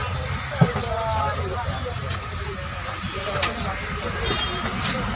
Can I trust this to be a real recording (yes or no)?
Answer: yes